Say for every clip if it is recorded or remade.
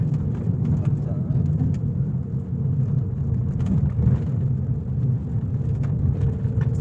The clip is recorded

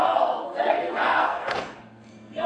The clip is remade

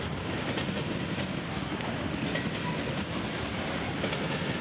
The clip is recorded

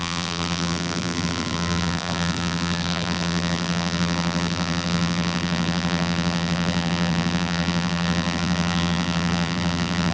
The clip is remade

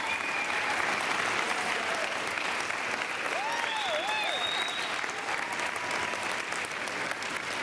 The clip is recorded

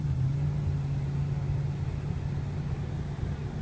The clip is recorded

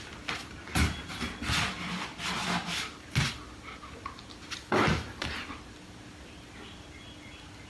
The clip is recorded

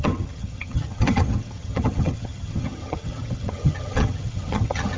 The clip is remade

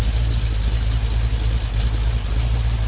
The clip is recorded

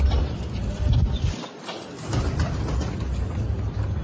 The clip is recorded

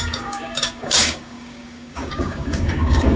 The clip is remade